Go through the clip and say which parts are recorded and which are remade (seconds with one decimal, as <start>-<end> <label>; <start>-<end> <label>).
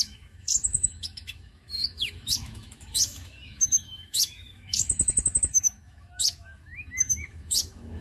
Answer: 0.0-8.0 remade